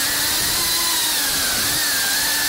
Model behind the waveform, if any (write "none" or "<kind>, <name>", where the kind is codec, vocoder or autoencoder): none